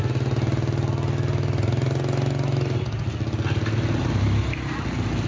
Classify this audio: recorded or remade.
recorded